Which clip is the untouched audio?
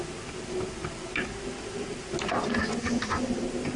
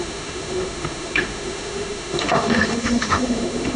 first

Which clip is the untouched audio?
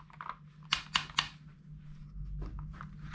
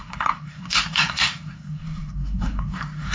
first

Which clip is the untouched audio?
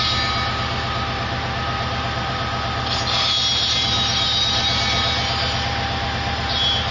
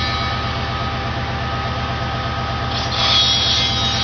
second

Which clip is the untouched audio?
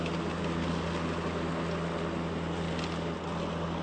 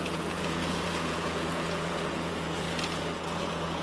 first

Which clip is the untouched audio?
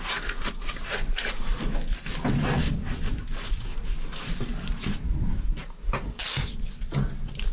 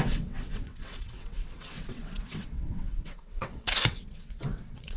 first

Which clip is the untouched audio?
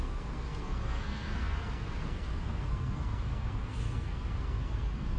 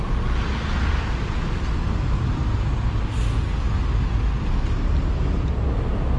second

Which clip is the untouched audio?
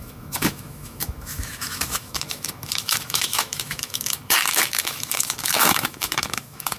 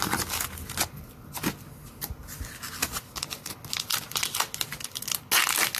second